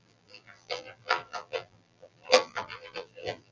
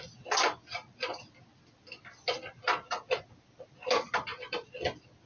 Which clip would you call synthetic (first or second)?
first